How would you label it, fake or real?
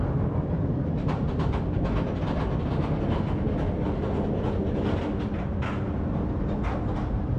real